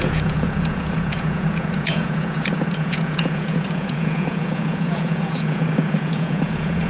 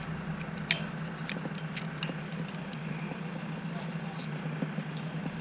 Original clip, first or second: second